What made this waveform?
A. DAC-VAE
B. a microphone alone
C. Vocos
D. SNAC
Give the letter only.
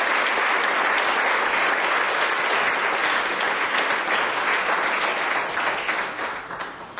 B